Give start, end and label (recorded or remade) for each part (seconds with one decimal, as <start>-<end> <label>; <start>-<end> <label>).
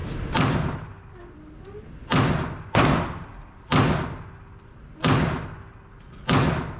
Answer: 0.0-6.8 recorded